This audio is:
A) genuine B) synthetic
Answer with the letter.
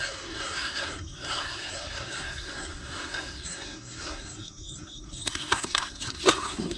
B